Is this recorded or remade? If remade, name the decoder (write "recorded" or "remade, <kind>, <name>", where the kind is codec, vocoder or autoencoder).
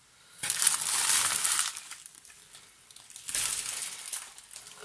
recorded